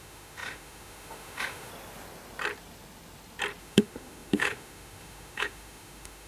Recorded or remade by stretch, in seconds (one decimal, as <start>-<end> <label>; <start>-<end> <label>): 0.0-1.7 remade; 1.7-3.6 recorded; 3.6-6.3 remade